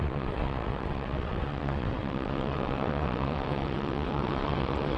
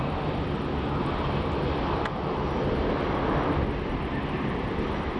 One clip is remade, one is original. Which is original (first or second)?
second